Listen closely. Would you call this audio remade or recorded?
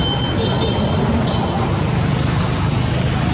recorded